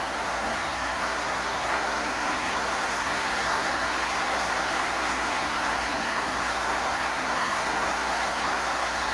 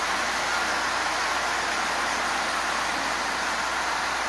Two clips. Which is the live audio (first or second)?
second